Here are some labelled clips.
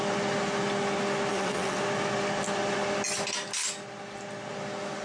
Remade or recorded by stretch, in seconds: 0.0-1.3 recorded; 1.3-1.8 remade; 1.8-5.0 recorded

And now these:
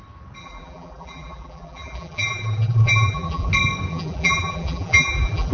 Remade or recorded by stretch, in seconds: 0.0-0.4 recorded; 0.4-3.5 remade; 3.5-3.9 recorded; 3.9-5.5 remade

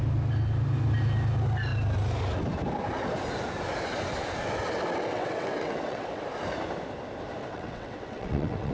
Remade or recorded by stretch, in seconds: 0.0-5.1 recorded; 5.1-6.2 remade; 6.2-7.4 recorded; 7.4-8.7 remade

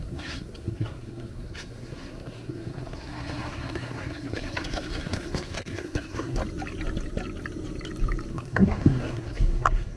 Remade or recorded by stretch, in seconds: 0.0-6.4 remade; 6.4-8.3 recorded; 8.3-10.0 remade

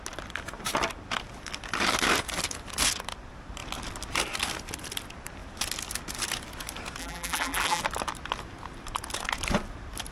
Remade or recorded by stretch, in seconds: 0.0-7.0 recorded; 7.0-7.8 remade; 7.8-10.1 recorded

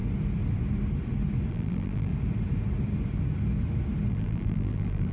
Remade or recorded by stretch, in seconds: 0.0-1.5 recorded; 1.5-2.1 remade; 2.1-4.1 recorded; 4.1-5.1 remade